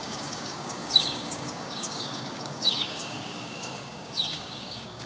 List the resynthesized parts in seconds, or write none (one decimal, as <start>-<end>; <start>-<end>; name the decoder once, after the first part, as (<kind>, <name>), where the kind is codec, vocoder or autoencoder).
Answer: 0.0-5.1 (codec, DAC)